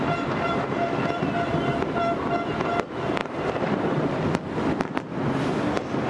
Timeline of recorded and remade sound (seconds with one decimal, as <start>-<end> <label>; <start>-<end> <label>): 0.0-6.1 remade